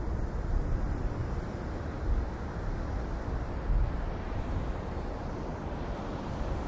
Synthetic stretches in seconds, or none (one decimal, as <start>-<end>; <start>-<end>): none